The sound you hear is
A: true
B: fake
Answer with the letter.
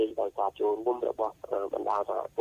A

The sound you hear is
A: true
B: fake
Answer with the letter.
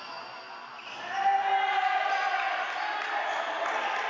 A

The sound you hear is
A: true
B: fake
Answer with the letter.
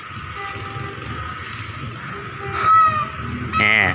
A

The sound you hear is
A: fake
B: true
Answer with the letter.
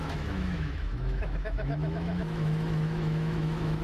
A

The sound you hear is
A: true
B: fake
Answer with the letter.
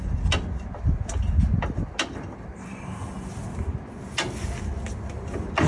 A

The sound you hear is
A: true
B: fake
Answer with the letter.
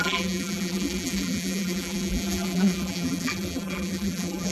B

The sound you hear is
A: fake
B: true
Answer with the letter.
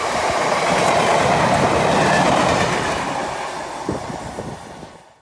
B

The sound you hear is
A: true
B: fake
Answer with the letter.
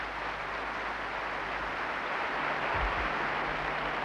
A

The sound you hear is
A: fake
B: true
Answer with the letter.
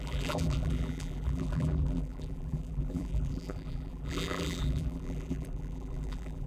A